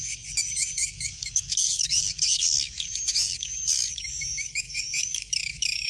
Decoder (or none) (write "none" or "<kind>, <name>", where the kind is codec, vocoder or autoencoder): autoencoder, DAC-VAE